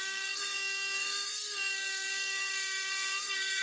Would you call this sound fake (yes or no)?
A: yes